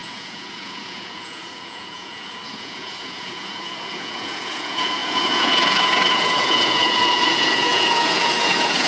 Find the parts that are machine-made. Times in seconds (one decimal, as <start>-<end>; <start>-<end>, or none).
0.0-8.9